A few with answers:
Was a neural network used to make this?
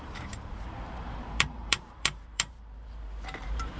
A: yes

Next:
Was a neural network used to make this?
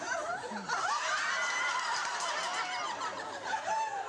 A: yes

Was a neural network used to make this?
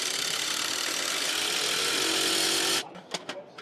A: no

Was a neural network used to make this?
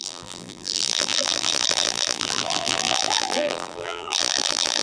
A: yes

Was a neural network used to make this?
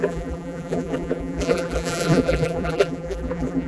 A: yes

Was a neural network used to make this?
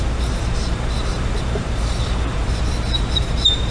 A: yes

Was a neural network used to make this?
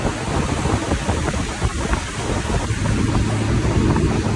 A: no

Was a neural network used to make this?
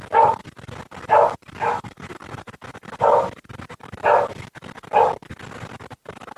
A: no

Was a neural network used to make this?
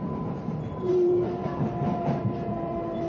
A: yes